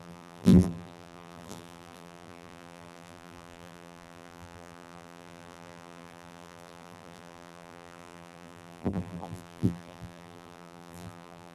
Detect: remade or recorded remade